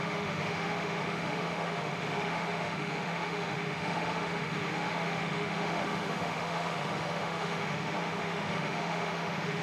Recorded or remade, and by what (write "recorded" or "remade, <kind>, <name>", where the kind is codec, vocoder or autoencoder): remade, autoencoder, DAC-VAE